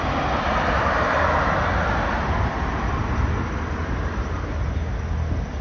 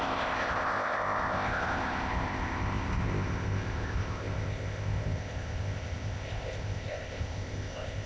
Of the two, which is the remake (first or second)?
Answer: second